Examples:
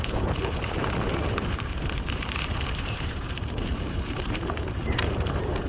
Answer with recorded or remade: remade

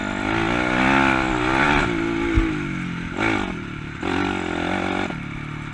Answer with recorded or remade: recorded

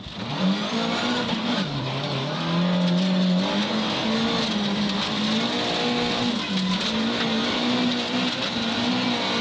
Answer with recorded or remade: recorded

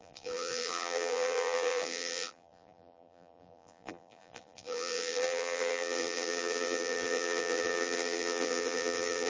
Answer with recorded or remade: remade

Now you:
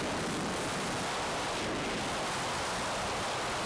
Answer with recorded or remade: recorded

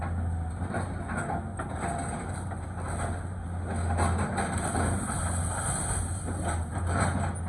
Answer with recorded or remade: recorded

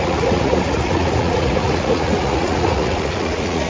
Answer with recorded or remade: remade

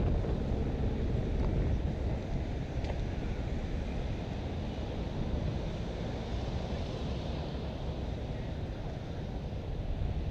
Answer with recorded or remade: recorded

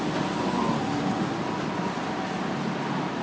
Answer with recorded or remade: recorded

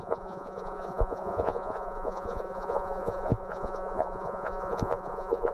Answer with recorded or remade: remade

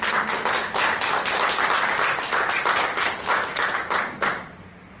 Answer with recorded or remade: recorded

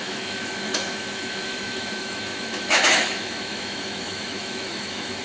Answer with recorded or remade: remade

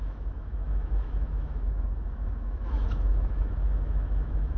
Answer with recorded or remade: remade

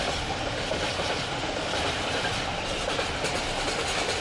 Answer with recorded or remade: remade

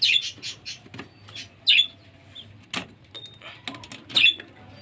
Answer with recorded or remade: recorded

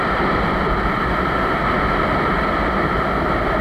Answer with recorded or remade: recorded